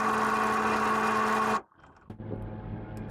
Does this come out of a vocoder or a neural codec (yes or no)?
no